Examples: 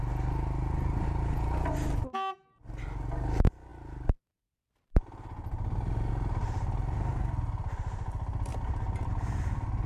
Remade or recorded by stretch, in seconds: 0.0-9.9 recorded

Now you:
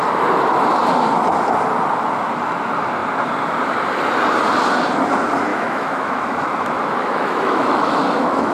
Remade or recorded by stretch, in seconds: 0.0-5.5 recorded; 5.5-8.5 remade

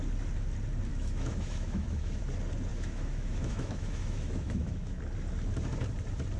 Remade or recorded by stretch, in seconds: 0.0-0.9 recorded; 0.9-2.2 remade; 2.2-2.7 recorded; 2.7-5.0 remade; 5.0-6.4 recorded

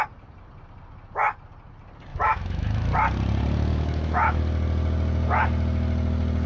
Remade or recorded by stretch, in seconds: 0.0-2.1 recorded; 2.1-2.9 remade; 2.9-3.7 recorded; 3.7-4.4 remade; 4.4-6.5 recorded

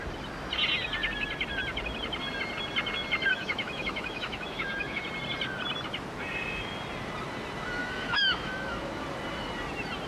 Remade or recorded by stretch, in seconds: 0.0-3.3 recorded; 3.3-5.0 remade; 5.0-7.8 recorded; 7.8-9.0 remade; 9.0-10.1 recorded

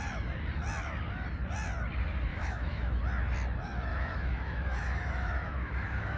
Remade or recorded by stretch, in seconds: 0.0-2.3 recorded; 2.3-3.0 remade; 3.0-3.9 recorded; 3.9-6.2 remade

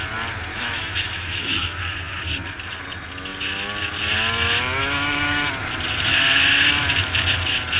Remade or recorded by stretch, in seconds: 0.0-0.5 recorded; 0.5-1.8 remade; 1.8-4.8 recorded; 4.8-5.5 remade; 5.5-7.8 recorded